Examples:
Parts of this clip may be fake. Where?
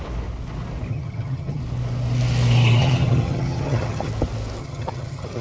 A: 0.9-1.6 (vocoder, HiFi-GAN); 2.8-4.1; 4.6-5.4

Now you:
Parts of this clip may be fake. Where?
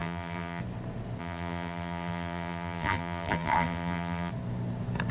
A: 0.0-0.6 (vocoder, BigVGAN v2); 1.2-4.3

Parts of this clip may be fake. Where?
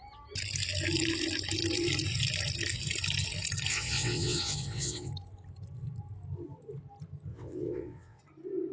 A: 3.7-5.1 (vocoder, WaveNeXt); 7.3-8.2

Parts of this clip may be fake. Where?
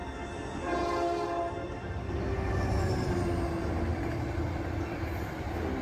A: none